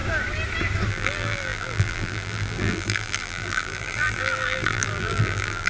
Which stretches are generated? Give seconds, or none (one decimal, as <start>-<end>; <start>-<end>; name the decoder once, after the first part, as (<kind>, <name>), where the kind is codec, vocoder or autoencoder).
0.9-5.7 (vocoder, BigVGAN v2)